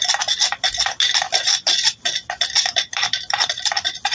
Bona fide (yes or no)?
yes